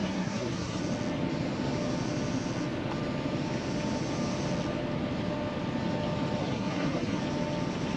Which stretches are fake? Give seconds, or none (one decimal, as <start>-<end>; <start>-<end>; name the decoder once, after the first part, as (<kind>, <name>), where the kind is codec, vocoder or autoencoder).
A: 0.0-0.8 (codec, SNAC); 6.4-7.2